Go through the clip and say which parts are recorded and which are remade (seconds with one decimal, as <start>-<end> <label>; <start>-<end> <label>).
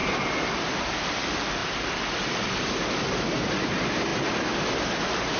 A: 0.0-5.4 recorded